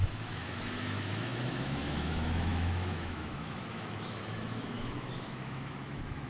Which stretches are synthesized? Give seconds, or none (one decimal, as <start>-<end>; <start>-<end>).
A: 0.0-6.3